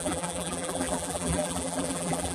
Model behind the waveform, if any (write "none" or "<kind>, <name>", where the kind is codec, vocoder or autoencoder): vocoder, BigVGAN v2